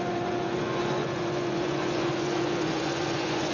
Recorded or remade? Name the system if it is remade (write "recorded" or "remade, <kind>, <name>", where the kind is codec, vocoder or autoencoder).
remade, vocoder, Vocos